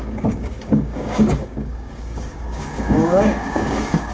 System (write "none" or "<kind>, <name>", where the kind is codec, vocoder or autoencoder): codec, DAC